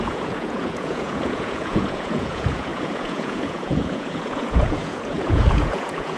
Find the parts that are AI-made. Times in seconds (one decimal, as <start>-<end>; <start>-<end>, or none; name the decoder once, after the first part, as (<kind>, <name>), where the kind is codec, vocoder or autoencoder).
0.0-6.2 (vocoder, Vocos)